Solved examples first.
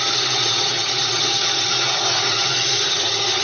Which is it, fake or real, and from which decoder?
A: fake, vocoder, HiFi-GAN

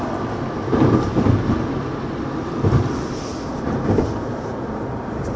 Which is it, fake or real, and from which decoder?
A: real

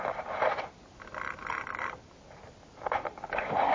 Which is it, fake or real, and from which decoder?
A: real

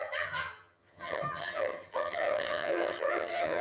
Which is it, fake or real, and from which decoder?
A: fake, vocoder, HiFi-GAN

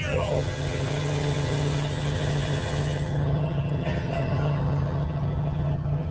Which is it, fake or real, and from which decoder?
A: fake, vocoder, HiFi-GAN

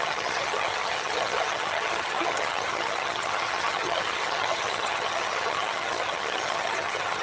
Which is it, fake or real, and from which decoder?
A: fake, vocoder, HiFi-GAN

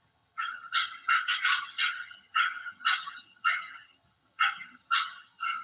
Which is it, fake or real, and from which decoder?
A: fake, vocoder, HiFi-GAN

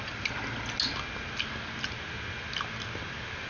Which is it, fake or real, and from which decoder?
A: real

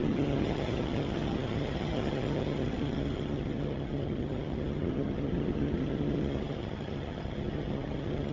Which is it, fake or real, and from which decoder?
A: fake, vocoder, HiFi-GAN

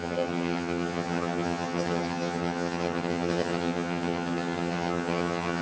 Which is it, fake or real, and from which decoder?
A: fake, vocoder, HiFi-GAN